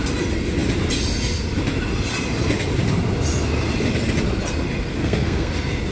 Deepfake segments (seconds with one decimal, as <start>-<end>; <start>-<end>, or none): 5.0-5.5